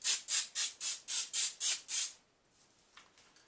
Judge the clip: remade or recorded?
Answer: recorded